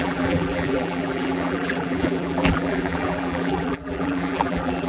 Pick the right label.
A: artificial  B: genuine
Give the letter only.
A